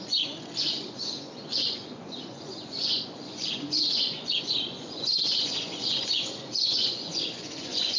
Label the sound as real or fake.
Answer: fake